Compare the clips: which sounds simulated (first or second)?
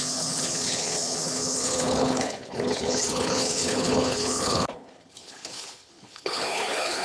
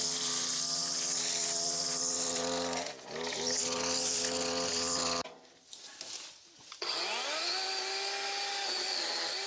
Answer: first